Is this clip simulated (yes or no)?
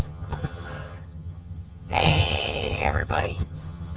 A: yes